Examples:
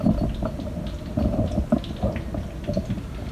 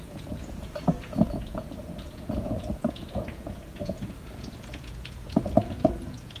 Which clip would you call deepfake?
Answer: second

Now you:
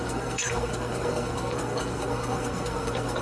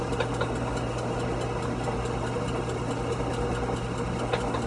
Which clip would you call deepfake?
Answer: first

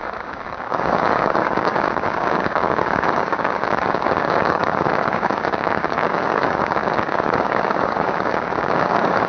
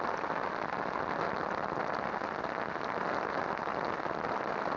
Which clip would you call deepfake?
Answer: first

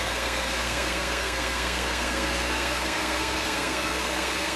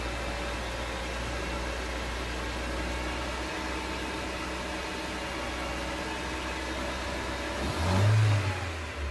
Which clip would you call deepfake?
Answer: first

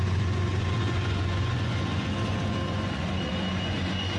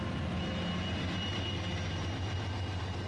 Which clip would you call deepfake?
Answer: first